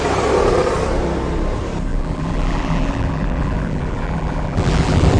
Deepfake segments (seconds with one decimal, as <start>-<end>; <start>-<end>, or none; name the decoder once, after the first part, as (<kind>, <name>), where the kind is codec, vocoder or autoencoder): 1.9-5.2 (vocoder, BigVGAN v2)